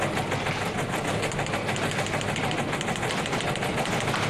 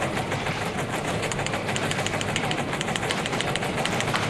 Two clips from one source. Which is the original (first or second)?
first